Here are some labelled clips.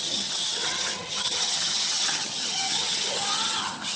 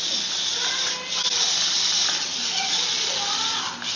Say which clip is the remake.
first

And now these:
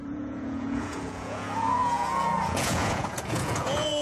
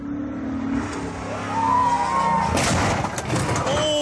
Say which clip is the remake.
first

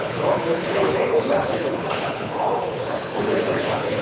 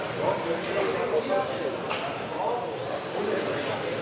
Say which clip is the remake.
first